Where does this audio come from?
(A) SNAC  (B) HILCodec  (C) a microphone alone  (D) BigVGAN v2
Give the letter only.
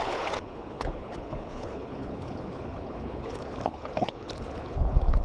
B